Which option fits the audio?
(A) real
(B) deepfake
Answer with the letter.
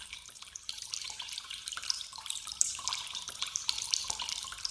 B